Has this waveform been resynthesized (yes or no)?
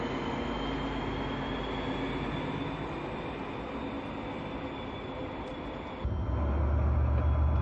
no